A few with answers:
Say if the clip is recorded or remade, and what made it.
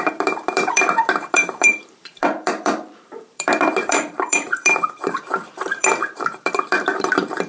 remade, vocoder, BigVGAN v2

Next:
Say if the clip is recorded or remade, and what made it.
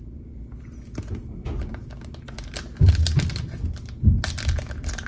recorded